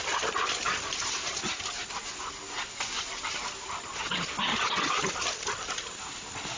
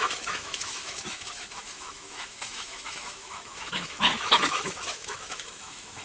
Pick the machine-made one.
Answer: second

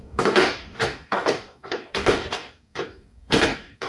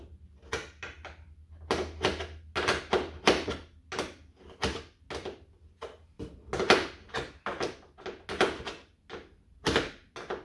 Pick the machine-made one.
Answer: first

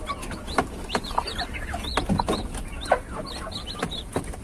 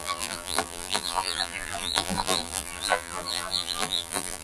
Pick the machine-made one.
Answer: second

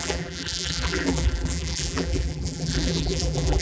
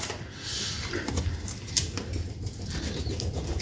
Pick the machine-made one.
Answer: first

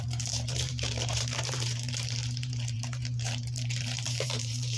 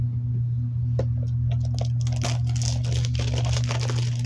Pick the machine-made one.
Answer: first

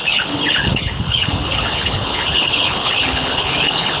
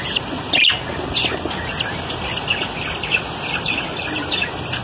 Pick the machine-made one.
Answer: first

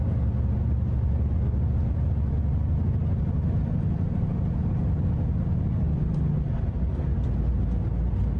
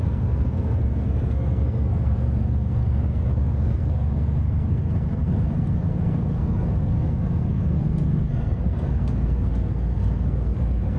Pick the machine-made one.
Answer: second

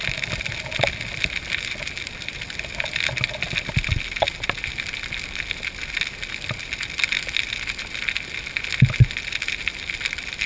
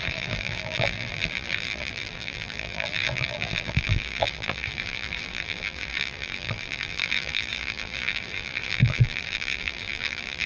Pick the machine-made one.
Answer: second